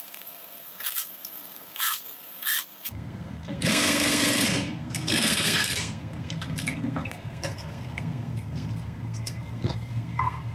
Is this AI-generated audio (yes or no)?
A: yes